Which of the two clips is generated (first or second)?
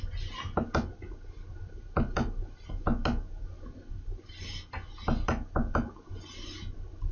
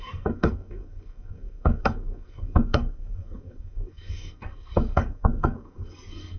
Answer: second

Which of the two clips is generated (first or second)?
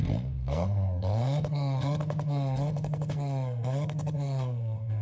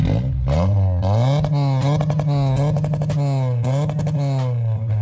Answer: first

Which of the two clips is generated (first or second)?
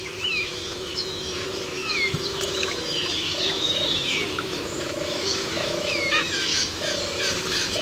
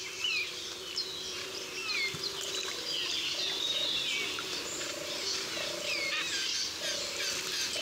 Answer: first